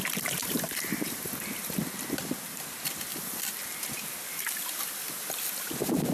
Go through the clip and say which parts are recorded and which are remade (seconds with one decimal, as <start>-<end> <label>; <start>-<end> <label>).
0.0-0.4 recorded; 0.4-1.3 remade; 1.3-6.1 recorded